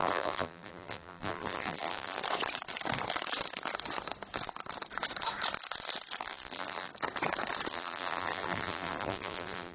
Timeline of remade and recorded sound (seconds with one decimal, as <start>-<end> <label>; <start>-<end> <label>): 0.0-2.2 remade; 2.2-6.2 recorded; 6.2-6.9 remade; 6.9-7.7 recorded; 7.7-9.7 remade